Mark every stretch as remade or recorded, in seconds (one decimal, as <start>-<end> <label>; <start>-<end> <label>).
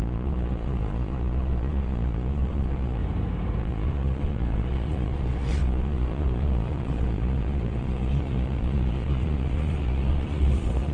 0.0-3.0 remade; 3.0-3.6 recorded; 3.6-10.9 remade